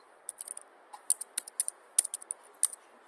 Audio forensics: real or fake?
real